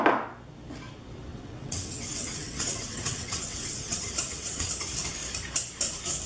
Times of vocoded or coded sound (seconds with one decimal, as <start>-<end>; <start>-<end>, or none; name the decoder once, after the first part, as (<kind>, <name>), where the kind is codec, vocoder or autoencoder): 1.3-4.7 (vocoder, WaveNeXt)